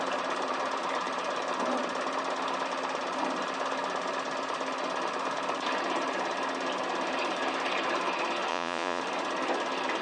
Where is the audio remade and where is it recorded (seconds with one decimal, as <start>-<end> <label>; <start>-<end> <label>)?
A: 0.0-8.5 recorded; 8.5-9.0 remade; 9.0-10.0 recorded